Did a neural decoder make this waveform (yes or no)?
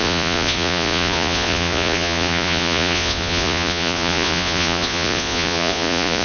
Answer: yes